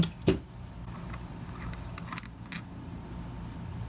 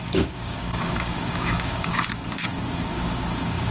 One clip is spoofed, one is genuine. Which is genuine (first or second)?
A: first